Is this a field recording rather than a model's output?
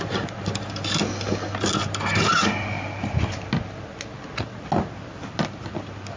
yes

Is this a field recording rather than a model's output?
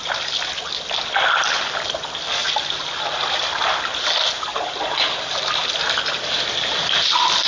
yes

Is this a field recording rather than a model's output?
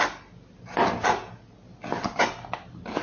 yes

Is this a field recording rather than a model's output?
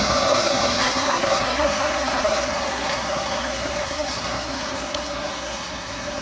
no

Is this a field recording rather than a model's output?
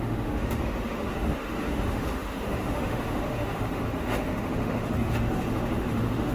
no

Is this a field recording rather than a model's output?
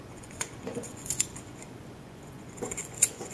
no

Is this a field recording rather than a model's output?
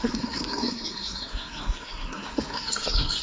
no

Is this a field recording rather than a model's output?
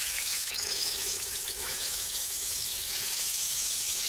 no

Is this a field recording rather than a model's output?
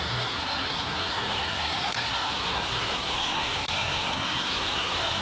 no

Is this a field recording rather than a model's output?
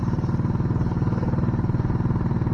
yes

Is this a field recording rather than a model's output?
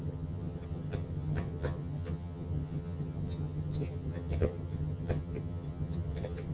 no